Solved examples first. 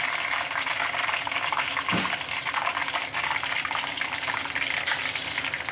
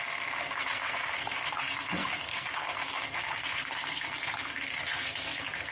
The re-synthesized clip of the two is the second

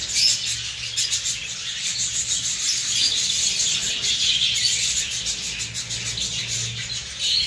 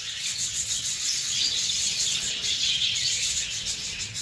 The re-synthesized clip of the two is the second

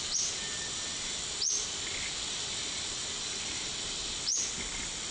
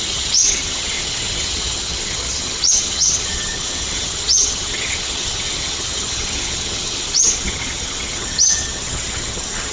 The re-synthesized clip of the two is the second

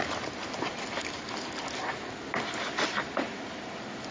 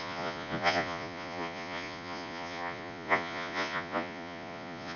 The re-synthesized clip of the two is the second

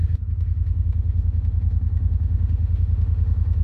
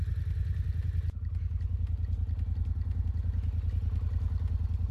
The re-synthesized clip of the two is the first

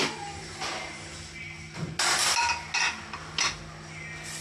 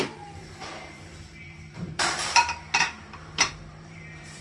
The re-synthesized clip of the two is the second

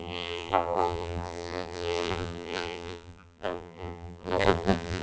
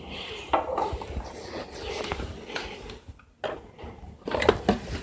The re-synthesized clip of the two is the first